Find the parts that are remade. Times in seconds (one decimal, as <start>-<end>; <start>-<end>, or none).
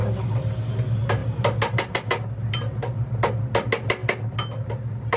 none